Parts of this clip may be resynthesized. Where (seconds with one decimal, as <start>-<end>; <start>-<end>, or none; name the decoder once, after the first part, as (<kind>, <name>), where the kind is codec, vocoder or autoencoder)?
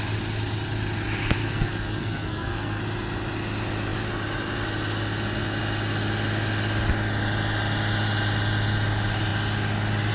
1.4-2.8 (codec, SNAC)